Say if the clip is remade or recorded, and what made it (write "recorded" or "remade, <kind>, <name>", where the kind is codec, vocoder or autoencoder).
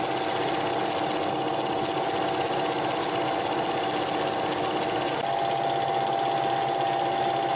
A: recorded